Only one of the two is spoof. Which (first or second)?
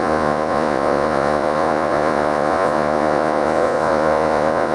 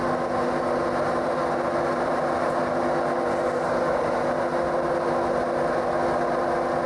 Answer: first